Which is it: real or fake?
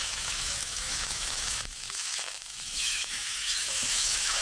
fake